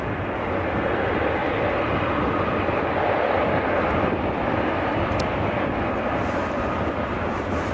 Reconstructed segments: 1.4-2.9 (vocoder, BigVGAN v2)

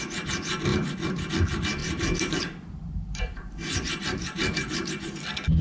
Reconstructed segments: 0.7-1.3 (vocoder, BigVGAN v2); 1.8-4.9

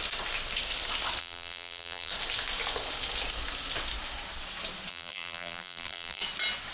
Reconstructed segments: 1.2-2.1 (vocoder, BigVGAN v2); 4.9-6.2

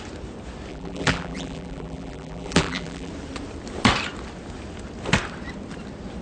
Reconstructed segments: 0.7-3.1 (vocoder, BigVGAN v2)

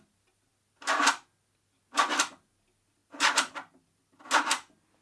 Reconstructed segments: none

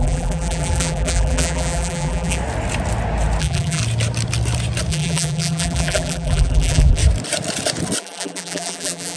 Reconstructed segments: 0.0-2.4 (vocoder, BigVGAN v2); 3.4-3.8; 4.9-7.0; 8.0-9.2

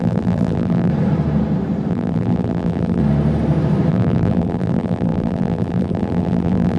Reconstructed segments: 0.0-0.9 (vocoder, BigVGAN v2); 1.9-3.0; 3.9-6.8

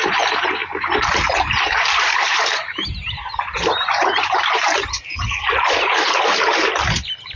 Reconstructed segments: 0.0-7.4 (vocoder, BigVGAN v2)